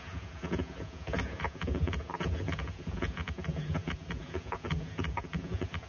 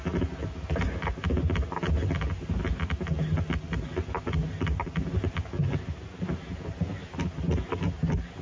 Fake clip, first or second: first